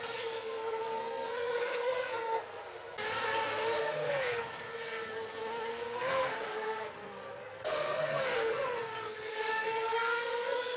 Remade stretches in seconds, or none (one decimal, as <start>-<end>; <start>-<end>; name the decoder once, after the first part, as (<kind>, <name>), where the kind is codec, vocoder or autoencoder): 0.0-2.6 (codec, SNAC); 3.8-4.4; 5.7-10.8